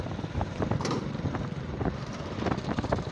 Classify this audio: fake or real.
fake